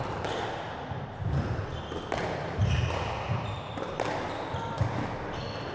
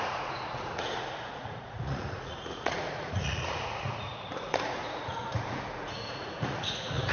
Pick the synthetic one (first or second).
second